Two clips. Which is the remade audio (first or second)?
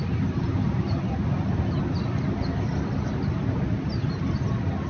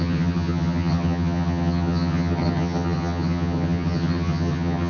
second